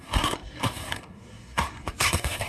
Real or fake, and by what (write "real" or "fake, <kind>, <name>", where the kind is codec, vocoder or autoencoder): fake, codec, SNAC